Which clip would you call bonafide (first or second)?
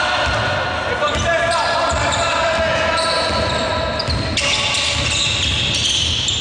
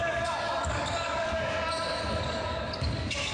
first